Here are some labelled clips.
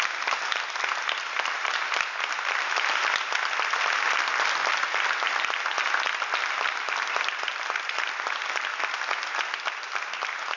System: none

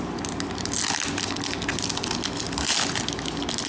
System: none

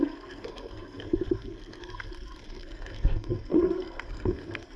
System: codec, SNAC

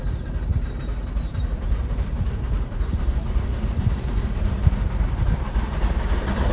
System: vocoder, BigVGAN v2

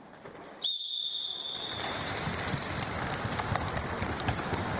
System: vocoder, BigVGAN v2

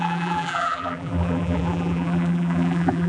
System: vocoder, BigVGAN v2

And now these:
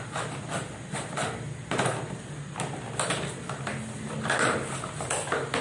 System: none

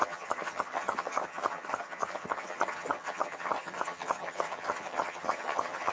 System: vocoder, HiFi-GAN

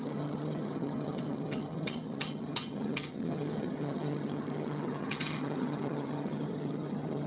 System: vocoder, HiFi-GAN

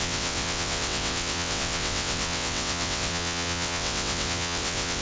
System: vocoder, WaveNeXt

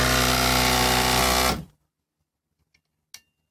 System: none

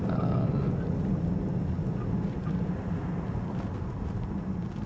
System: none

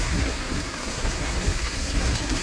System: codec, SNAC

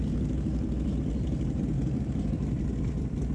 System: none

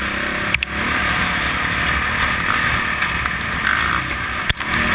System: none